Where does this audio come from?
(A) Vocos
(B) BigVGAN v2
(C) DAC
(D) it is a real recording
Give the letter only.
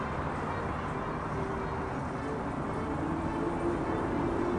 D